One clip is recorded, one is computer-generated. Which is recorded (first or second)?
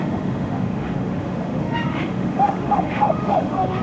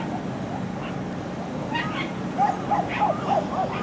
second